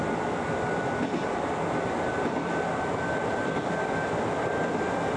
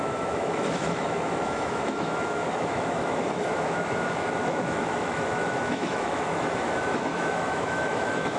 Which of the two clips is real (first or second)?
first